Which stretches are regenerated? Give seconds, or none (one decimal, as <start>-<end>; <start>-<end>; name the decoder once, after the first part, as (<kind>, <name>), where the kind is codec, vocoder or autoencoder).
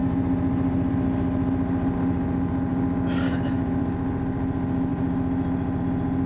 none